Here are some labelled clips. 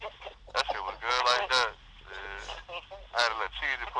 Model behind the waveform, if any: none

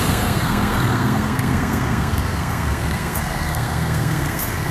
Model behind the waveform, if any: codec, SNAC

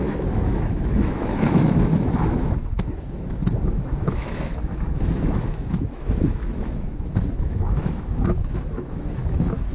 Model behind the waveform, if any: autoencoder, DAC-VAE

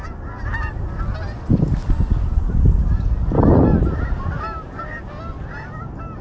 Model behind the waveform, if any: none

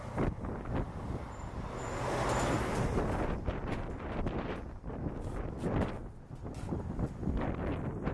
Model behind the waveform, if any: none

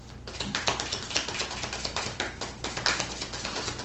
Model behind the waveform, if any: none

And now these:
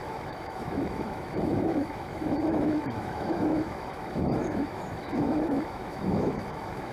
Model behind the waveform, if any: autoencoder, DAC-VAE